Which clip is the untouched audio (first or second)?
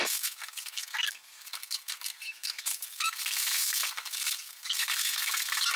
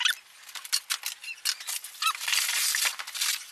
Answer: second